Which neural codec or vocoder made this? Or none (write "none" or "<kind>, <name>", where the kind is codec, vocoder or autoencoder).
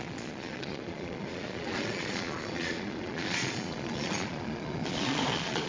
vocoder, Vocos